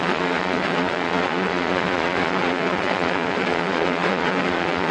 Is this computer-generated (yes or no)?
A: yes